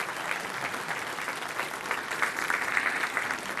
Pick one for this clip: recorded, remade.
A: recorded